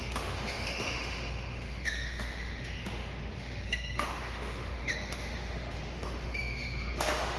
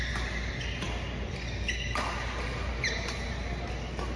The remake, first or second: first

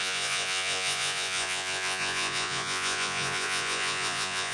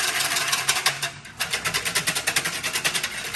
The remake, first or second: first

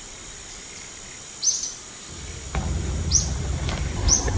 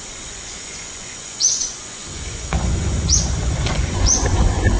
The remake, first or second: second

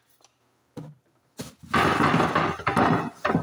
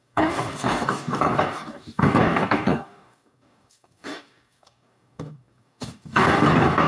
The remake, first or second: second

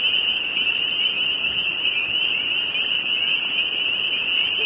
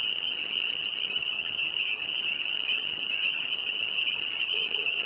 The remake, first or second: second